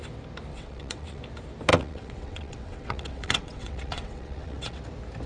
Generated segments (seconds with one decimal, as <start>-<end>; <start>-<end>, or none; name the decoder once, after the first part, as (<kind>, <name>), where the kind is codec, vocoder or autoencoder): 0.5-1.2 (vocoder, WaveNeXt); 1.7-4.8

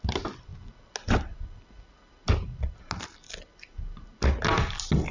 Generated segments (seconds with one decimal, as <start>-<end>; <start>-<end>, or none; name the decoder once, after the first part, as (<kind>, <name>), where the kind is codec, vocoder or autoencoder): none

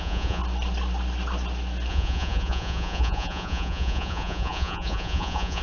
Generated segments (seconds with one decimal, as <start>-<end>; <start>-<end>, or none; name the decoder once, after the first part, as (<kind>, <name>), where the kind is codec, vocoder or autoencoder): 0.0-0.4 (vocoder, Vocos); 1.9-5.6

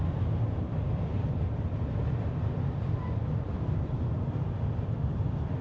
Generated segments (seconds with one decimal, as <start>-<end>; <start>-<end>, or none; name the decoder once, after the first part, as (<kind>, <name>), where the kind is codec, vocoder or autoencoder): 0.0-5.6 (vocoder, BigVGAN v2)